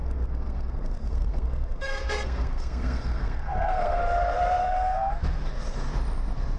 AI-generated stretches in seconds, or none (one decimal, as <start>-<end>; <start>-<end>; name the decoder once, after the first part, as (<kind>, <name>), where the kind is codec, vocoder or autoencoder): 0.0-4.0 (codec, SNAC); 4.6-5.1